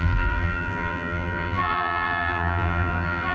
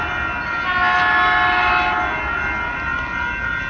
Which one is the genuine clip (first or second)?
second